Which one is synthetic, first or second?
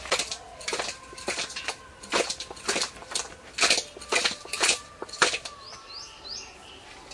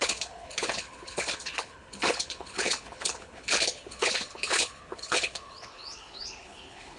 second